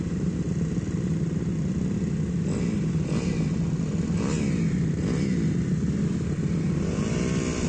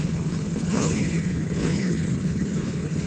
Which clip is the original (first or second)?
first